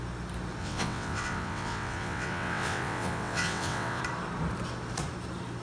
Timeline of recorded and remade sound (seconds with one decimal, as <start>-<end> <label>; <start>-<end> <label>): 0.0-0.6 recorded; 0.6-4.0 remade; 4.0-5.6 recorded